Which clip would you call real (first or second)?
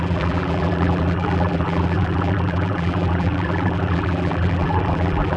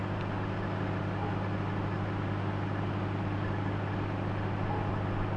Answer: second